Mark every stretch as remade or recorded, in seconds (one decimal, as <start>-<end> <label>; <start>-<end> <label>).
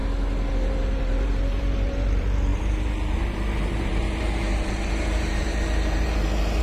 0.0-0.5 recorded; 0.5-6.6 remade